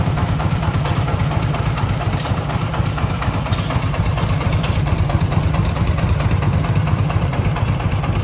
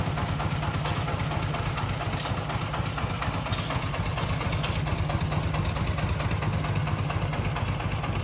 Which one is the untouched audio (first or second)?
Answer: second